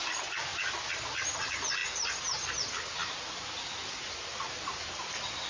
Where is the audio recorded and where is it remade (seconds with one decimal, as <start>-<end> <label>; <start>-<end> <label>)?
0.0-5.5 recorded